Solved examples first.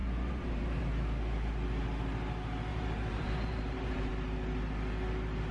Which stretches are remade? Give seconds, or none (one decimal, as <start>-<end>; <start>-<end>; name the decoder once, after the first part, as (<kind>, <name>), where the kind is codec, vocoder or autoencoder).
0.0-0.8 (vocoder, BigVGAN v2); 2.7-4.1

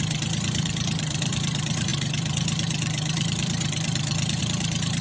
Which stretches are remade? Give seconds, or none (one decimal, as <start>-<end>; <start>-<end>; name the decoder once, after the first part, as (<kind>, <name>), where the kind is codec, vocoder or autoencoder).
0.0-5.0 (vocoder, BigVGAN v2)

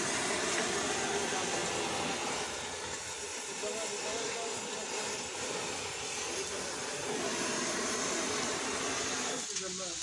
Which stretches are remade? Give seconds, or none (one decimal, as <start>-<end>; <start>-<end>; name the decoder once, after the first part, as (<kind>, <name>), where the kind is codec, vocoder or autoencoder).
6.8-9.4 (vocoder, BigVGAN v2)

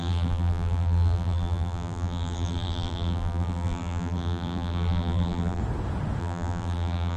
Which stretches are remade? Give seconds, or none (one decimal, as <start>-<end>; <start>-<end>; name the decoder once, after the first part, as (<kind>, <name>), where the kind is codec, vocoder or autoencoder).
0.0-5.6 (vocoder, BigVGAN v2); 6.2-7.2

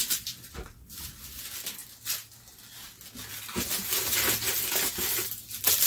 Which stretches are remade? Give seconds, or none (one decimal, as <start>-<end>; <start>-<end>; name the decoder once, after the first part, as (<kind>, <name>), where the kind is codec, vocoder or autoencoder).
none

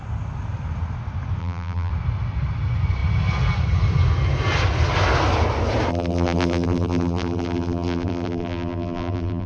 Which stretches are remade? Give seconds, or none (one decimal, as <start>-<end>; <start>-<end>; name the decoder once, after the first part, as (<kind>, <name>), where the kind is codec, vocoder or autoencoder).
1.4-1.9 (vocoder, BigVGAN v2); 5.9-9.5

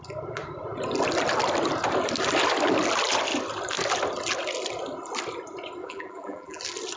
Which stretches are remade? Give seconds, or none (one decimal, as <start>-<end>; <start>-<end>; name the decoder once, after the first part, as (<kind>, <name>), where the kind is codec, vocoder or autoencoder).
5.8-6.6 (vocoder, BigVGAN v2)

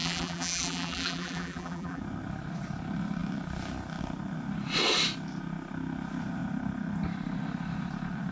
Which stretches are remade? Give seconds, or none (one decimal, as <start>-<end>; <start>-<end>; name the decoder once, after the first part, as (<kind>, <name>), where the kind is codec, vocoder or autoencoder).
0.0-2.0 (vocoder, BigVGAN v2)